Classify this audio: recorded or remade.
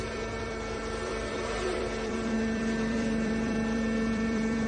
remade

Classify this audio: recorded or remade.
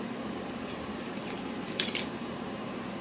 remade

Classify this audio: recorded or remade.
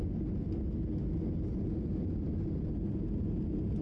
recorded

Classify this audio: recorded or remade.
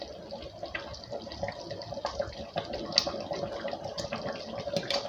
recorded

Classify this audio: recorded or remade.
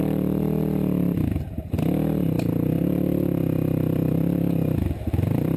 remade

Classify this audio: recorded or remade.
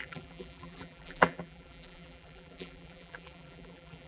remade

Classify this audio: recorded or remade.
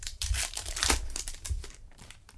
remade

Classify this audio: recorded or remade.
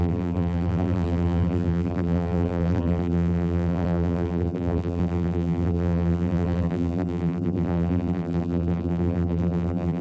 remade